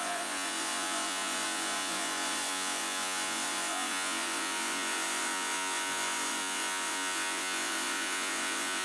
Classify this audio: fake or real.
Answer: fake